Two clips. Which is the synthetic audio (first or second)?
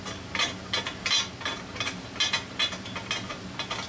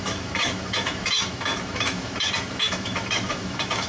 second